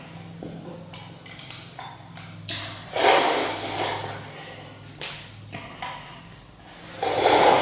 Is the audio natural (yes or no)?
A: yes